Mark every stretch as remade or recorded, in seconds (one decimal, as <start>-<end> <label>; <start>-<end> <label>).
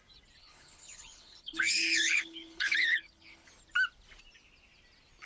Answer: 0.0-0.4 recorded; 0.4-3.5 remade; 3.5-5.2 recorded